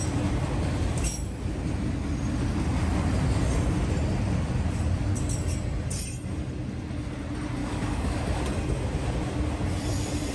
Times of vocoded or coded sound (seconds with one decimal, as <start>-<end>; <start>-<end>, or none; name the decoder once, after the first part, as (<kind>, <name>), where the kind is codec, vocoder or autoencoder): 7.6-8.4 (codec, DAC)